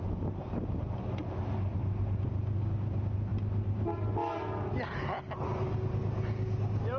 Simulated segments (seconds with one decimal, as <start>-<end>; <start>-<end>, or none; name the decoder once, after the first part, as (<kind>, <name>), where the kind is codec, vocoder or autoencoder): none